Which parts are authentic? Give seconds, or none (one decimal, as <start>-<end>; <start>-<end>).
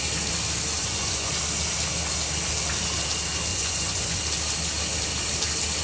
0.0-0.8; 1.3-3.5; 4.2-5.8